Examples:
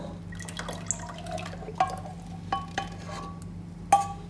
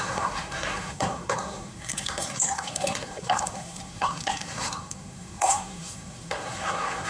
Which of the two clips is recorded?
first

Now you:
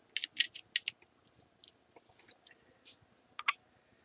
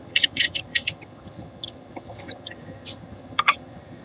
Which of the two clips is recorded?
first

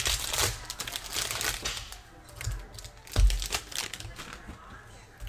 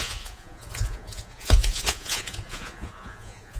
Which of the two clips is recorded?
first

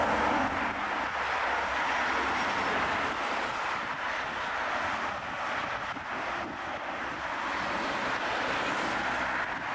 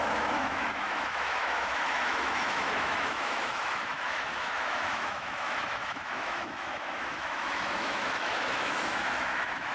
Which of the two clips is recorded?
first